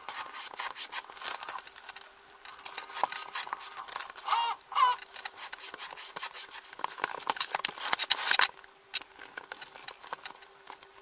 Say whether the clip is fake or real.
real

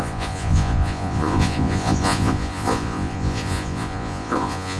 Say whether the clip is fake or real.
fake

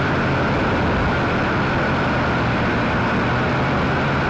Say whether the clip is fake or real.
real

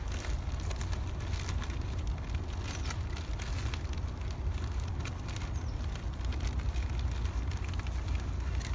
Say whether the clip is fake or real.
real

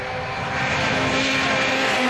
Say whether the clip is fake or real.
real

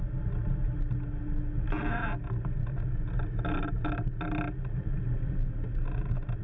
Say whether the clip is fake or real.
real